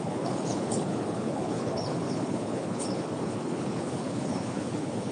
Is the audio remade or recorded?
remade